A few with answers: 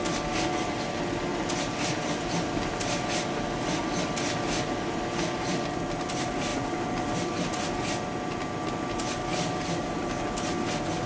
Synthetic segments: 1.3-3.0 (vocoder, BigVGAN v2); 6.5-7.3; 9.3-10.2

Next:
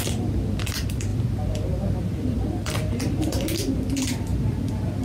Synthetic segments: none